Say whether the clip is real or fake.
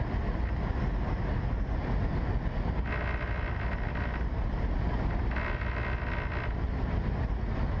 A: real